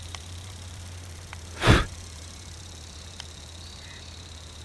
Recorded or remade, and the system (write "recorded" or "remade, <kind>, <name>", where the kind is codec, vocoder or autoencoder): remade, vocoder, BigVGAN v2